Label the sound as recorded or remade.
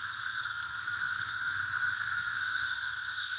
remade